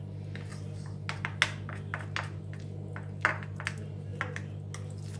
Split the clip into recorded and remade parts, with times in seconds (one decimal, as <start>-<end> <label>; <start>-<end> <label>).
0.0-5.2 recorded

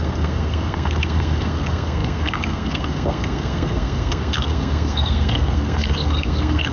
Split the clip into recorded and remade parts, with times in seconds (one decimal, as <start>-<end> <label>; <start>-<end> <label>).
0.0-6.7 remade

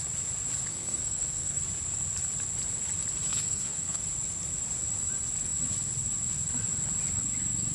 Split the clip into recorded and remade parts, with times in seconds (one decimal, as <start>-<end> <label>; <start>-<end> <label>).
0.0-0.7 recorded; 0.7-1.6 remade; 1.6-3.3 recorded; 3.3-4.0 remade; 4.0-7.7 recorded

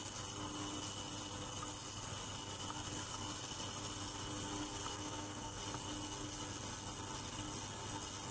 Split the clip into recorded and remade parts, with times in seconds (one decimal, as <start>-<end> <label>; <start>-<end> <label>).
0.0-4.9 recorded; 4.9-5.6 remade; 5.6-8.3 recorded

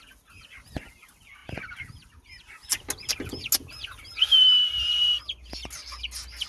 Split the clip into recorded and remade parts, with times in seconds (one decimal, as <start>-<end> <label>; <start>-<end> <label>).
0.0-6.5 recorded